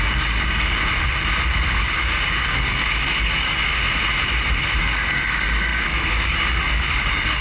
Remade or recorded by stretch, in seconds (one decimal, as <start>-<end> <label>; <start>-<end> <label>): 0.0-0.8 remade; 0.8-1.5 recorded; 1.5-3.7 remade; 3.7-4.8 recorded; 4.8-7.4 remade